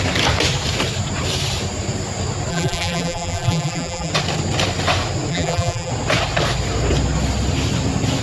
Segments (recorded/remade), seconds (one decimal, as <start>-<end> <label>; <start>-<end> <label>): 0.0-2.5 recorded; 2.5-4.1 remade; 4.1-5.3 recorded; 5.3-5.9 remade; 5.9-8.2 recorded